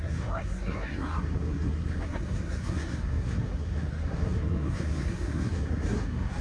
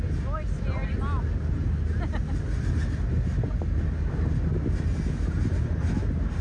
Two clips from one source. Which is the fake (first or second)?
first